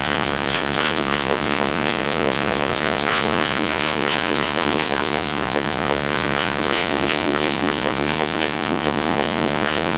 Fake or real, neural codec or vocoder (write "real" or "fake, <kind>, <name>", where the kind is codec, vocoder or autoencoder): fake, vocoder, Vocos